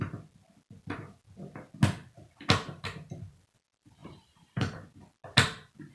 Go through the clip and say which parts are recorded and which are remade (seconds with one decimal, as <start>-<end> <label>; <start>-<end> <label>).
0.0-4.0 recorded; 4.0-4.8 remade; 4.8-5.9 recorded